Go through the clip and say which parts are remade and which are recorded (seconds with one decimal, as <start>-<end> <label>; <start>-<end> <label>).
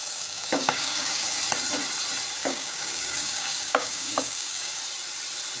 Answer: 0.0-1.4 remade; 1.4-2.4 recorded; 2.4-4.8 remade; 4.8-5.6 recorded